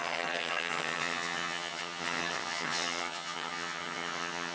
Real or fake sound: fake